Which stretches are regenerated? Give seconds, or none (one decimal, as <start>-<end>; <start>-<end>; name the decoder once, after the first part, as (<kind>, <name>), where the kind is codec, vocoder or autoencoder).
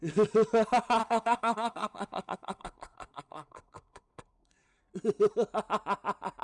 1.0-4.8 (codec, SNAC)